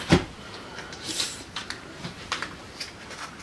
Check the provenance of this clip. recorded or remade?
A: remade